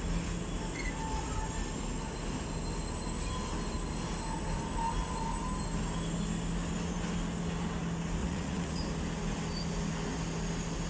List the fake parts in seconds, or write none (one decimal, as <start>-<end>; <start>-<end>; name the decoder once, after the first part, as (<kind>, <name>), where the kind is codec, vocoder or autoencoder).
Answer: 8.2-8.8 (vocoder, Vocos)